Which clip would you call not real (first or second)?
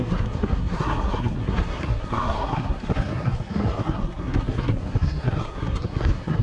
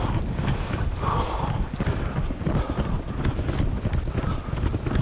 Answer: first